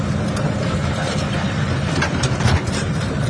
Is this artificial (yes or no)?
yes